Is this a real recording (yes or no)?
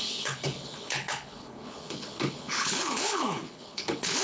no